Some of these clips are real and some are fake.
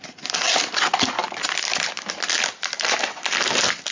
real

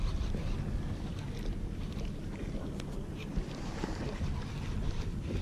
real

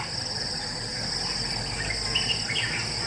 real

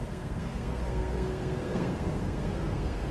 fake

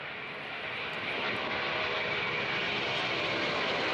real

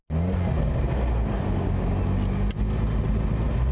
real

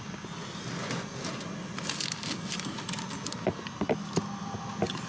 real